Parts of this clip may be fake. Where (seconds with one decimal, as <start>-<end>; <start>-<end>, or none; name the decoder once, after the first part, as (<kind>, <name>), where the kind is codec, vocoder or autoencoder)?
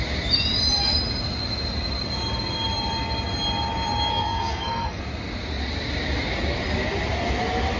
4.1-5.0 (codec, SNAC)